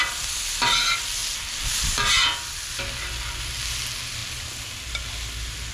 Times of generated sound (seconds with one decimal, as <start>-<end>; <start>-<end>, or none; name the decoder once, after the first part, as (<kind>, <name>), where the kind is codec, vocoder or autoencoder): none